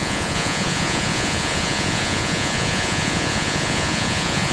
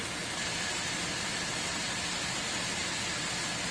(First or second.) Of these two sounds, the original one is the second